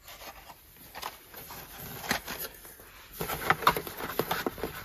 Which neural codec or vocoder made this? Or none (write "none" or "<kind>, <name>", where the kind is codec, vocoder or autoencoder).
none